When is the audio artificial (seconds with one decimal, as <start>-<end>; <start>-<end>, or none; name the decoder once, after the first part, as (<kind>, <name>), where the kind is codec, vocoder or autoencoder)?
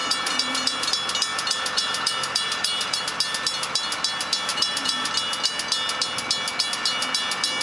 0.0-0.9 (vocoder, BigVGAN v2); 1.3-3.0; 4.5-5.1